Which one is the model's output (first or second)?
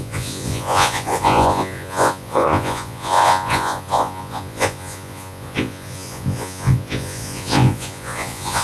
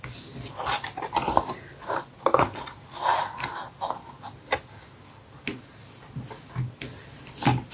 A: first